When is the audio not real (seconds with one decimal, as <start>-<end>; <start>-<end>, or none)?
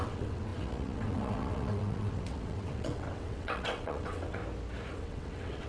0.0-4.4; 4.9-5.7